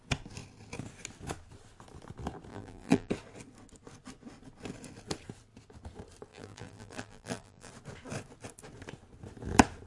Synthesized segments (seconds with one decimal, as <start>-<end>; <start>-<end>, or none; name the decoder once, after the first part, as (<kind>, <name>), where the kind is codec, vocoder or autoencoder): 2.5-3.1 (vocoder, BigVGAN v2); 6.3-7.7